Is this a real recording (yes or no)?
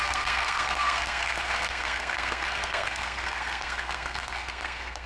no